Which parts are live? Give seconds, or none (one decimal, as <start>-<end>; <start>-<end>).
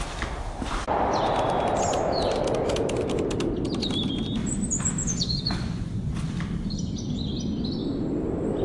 0.0-5.0; 6.1-8.6